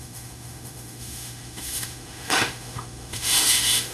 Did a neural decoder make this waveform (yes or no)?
yes